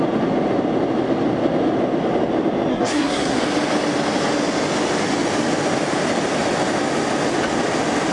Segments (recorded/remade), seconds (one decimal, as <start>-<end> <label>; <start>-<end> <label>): 0.0-2.7 recorded; 2.7-3.4 remade; 3.4-8.1 recorded

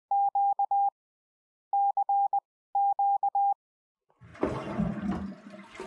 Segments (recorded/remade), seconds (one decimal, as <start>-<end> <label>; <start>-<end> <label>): 0.0-5.9 recorded

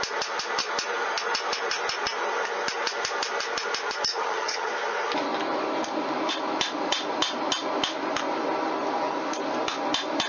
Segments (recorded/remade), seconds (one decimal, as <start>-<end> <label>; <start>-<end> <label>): 0.0-4.1 recorded; 4.1-4.7 remade; 4.7-10.3 recorded